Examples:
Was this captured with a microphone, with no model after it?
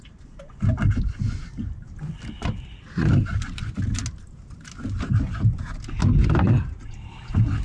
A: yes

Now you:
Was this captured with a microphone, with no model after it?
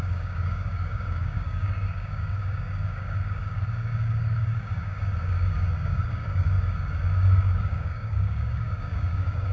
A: no